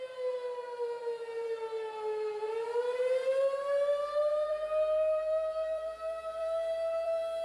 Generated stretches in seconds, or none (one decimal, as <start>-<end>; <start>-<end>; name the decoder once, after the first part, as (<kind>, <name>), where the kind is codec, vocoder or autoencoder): 0.0-7.4 (vocoder, BigVGAN v2)